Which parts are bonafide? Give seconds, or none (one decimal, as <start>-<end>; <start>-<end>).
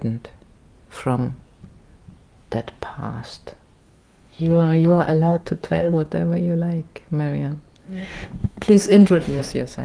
0.0-3.8; 6.1-7.8; 9.4-9.8